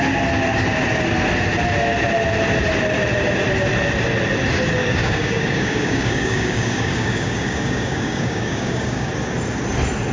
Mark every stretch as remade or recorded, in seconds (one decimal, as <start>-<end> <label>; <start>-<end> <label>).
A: 0.0-4.8 recorded; 4.8-9.1 remade; 9.1-10.1 recorded